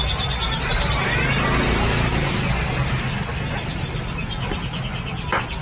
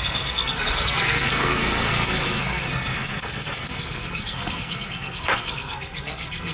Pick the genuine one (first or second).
first